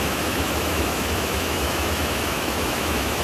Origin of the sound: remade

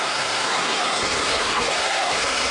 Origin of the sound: remade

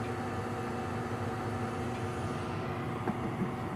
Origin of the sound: recorded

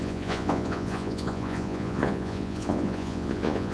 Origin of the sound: remade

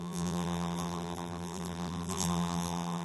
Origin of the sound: remade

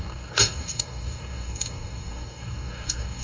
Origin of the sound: remade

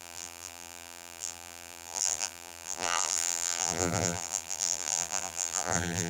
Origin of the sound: remade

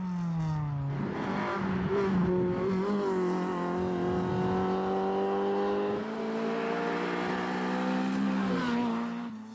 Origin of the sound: recorded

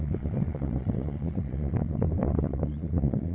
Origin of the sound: remade